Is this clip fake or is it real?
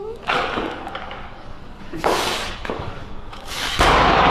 fake